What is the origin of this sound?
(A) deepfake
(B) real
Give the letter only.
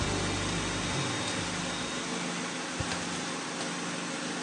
B